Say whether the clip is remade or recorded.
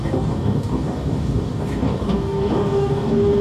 remade